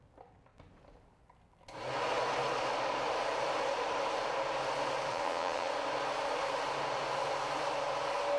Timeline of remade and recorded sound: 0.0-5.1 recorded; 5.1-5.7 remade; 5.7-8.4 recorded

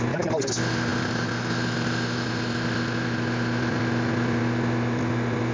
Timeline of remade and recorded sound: 0.0-5.5 recorded